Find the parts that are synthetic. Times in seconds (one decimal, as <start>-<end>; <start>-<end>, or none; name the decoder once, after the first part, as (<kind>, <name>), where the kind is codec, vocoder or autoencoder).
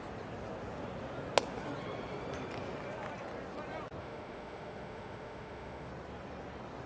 4.0-5.9 (autoencoder, DAC-VAE)